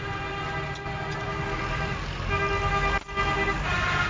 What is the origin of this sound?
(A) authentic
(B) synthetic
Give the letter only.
A